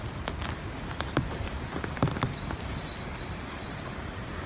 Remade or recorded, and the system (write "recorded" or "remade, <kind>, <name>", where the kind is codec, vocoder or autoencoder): recorded